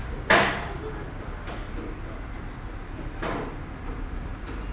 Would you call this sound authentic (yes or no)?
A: yes